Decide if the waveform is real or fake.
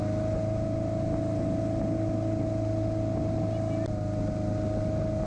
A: real